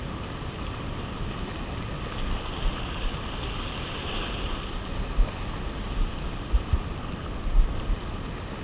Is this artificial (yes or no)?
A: no